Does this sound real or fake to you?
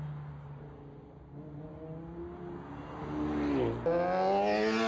real